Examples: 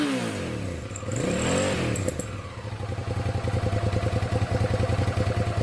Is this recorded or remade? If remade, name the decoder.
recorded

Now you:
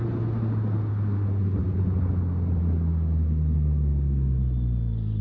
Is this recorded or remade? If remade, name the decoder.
recorded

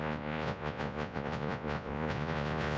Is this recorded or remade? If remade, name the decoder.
remade, vocoder, Vocos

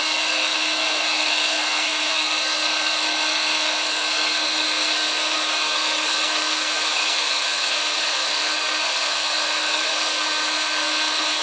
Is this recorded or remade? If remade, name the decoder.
remade, codec, SNAC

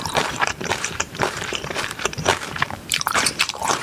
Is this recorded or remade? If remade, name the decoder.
remade, vocoder, BigVGAN v2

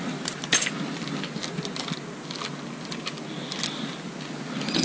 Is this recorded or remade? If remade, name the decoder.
recorded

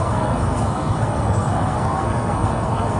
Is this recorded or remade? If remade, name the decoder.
remade, codec, SNAC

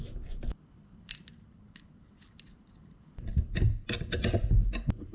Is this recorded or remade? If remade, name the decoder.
recorded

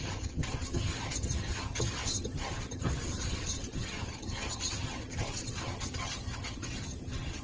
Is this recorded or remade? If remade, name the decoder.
remade, vocoder, HiFi-GAN